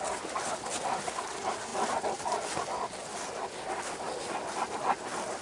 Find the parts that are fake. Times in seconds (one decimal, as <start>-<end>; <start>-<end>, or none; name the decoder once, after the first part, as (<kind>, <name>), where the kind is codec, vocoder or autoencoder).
none